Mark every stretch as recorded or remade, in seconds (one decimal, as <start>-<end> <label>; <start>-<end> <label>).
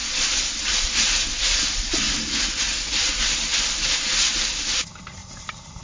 0.0-2.5 remade; 2.5-5.2 recorded; 5.2-5.8 remade